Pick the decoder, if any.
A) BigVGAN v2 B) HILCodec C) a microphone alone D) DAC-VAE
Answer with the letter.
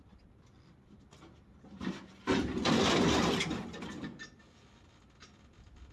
C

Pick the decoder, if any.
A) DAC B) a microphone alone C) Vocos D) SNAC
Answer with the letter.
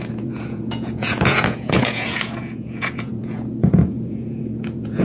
C